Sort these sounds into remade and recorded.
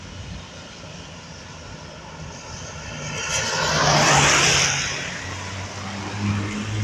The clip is recorded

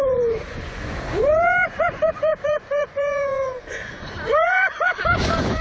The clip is remade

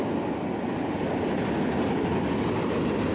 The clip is recorded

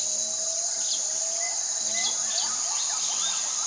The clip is recorded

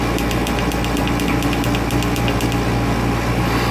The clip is recorded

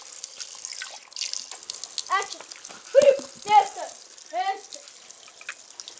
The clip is recorded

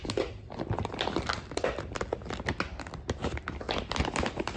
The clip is recorded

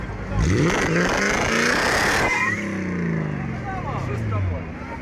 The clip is recorded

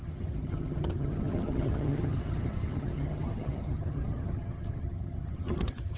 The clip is remade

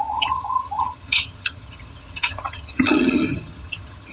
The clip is remade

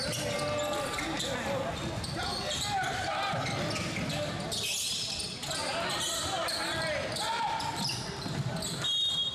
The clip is recorded